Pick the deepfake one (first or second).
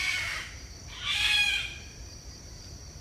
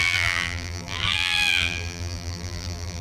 second